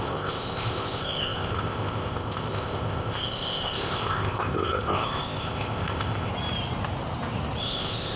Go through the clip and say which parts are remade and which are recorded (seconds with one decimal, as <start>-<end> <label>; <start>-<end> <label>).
0.0-6.3 remade; 6.3-7.6 recorded; 7.6-8.2 remade